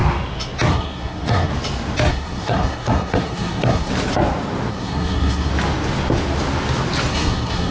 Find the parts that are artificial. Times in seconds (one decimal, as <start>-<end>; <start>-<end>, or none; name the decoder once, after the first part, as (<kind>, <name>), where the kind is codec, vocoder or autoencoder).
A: 0.7-1.5 (codec, SNAC); 2.1-3.9; 4.7-5.5; 7.1-7.7